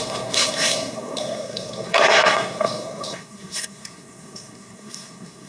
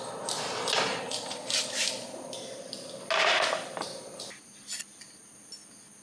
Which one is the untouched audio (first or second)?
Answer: second